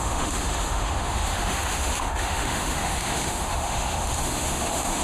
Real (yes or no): no